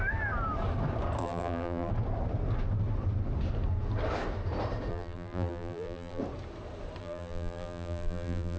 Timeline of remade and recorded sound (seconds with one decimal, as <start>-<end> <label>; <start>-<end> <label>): 0.0-1.2 recorded; 1.2-1.9 remade; 1.9-4.9 recorded; 4.9-6.2 remade; 6.2-7.0 recorded; 7.0-8.6 remade